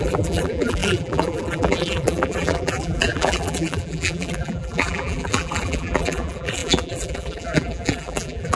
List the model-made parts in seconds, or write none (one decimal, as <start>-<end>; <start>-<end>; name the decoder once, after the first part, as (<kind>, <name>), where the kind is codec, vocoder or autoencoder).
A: 0.0-8.5 (vocoder, BigVGAN v2)